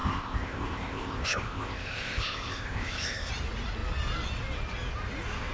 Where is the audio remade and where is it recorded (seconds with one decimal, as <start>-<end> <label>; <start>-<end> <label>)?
0.0-3.3 remade; 3.3-5.5 recorded